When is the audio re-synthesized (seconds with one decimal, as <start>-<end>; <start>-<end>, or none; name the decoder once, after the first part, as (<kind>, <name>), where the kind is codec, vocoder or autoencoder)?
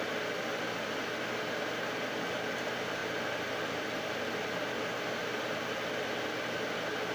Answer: none